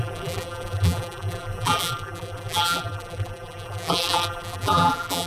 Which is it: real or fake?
fake